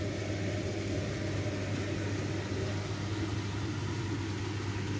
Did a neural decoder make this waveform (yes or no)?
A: no